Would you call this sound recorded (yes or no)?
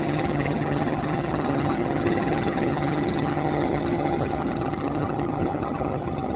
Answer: no